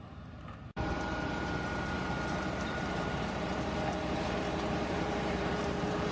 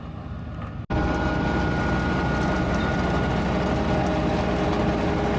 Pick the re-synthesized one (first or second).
first